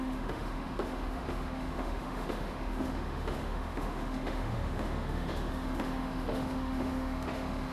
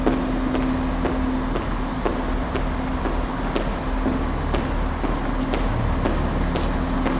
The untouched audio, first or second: second